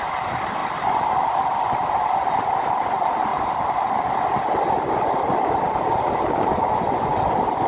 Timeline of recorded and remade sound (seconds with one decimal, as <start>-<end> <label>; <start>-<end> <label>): 0.0-6.4 recorded; 6.4-7.1 remade; 7.1-7.7 recorded